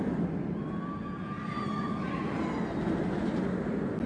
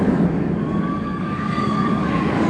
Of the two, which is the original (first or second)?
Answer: first